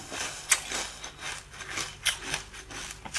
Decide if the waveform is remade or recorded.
recorded